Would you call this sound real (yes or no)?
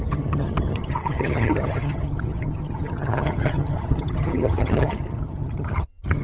no